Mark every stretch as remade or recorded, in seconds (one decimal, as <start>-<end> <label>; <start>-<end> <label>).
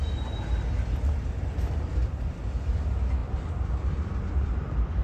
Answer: 0.0-5.0 recorded